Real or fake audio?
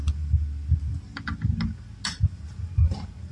real